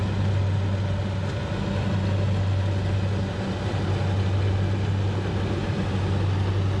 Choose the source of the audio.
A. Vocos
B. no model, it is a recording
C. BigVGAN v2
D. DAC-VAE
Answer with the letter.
B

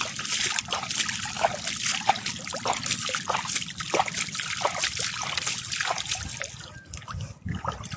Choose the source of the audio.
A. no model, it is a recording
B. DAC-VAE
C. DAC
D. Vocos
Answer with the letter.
A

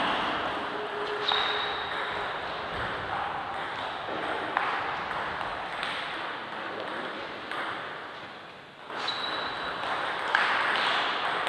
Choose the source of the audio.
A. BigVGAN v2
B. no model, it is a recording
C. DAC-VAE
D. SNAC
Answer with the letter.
B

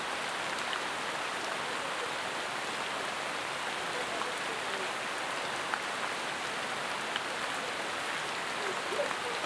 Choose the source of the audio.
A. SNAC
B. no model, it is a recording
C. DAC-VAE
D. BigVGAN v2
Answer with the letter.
B